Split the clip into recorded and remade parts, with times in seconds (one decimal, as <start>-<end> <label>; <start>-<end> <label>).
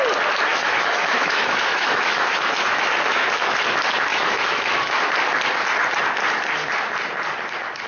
0.0-0.5 recorded; 0.5-3.6 remade; 3.6-4.1 recorded; 4.1-5.1 remade; 5.1-7.9 recorded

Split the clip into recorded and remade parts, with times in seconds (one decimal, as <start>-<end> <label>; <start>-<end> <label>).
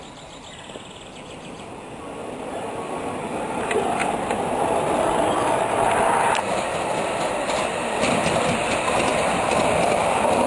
0.0-9.1 remade; 9.1-10.0 recorded; 10.0-10.5 remade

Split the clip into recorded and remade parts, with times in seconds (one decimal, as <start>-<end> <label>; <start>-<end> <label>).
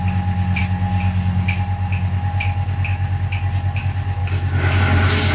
0.0-5.3 recorded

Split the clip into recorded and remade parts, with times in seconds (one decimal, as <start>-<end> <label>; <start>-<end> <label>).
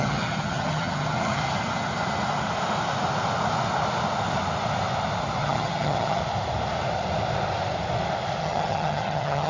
0.0-1.4 remade; 1.4-5.4 recorded; 5.4-6.2 remade; 6.2-8.4 recorded; 8.4-9.5 remade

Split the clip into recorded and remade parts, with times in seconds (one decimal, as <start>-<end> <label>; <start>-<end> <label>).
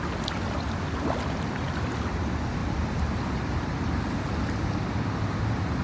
0.0-5.8 recorded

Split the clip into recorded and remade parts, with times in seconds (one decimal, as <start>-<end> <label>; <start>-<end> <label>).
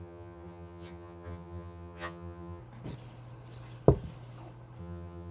0.0-2.6 remade; 2.6-4.8 recorded; 4.8-5.3 remade